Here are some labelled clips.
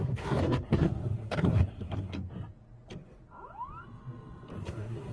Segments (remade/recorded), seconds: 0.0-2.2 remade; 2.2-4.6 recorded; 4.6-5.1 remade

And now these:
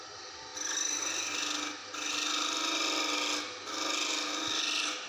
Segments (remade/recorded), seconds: 0.0-5.1 recorded

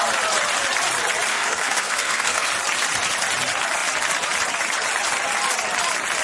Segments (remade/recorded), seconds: 0.0-1.3 recorded; 1.3-2.5 remade; 2.5-6.2 recorded

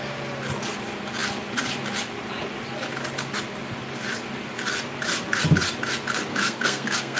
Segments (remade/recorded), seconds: 0.0-6.3 recorded; 6.3-7.2 remade